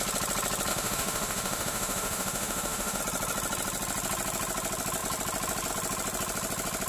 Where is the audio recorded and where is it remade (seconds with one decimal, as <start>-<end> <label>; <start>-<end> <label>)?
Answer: 0.0-0.7 recorded; 0.7-3.0 remade; 3.0-6.9 recorded